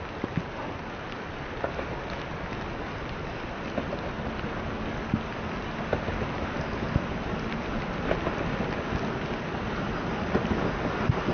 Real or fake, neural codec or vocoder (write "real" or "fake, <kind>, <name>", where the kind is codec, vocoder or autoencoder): real